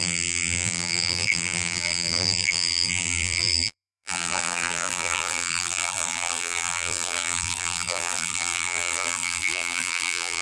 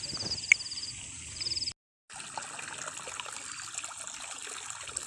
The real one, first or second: second